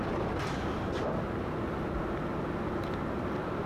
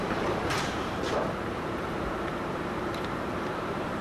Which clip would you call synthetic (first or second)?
second